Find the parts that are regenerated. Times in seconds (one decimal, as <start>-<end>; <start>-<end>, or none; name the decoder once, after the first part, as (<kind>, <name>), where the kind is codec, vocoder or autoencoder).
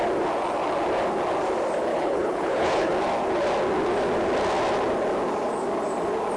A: 1.9-2.9 (codec, HILCodec)